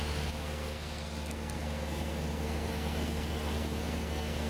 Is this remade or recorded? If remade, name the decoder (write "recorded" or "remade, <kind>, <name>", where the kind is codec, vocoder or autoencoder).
remade, codec, SNAC